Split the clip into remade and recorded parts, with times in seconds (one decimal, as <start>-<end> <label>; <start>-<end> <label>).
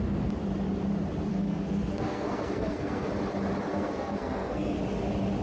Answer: 0.0-1.3 recorded; 1.3-3.1 remade; 3.1-3.7 recorded; 3.7-4.8 remade; 4.8-5.4 recorded